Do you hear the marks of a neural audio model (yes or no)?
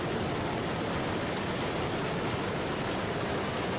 no